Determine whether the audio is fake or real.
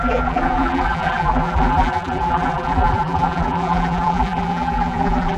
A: fake